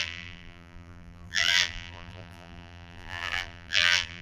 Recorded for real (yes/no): no